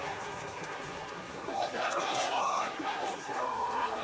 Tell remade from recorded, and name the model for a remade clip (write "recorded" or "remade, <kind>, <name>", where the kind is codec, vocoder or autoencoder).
remade, codec, SNAC